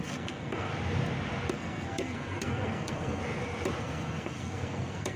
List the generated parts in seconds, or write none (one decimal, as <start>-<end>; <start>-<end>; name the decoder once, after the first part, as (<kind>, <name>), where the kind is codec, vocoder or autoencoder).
0.0-0.7 (codec, SNAC); 1.5-3.2; 3.8-5.2